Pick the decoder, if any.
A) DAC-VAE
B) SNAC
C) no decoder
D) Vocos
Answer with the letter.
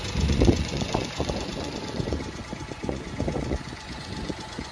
D